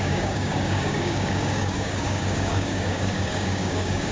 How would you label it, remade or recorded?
remade